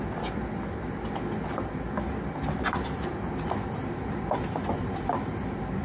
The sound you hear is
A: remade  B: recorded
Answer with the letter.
B